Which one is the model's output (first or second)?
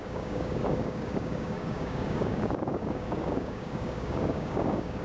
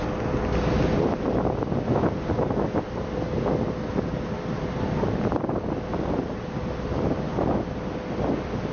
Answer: first